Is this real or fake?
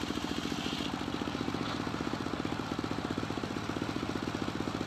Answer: real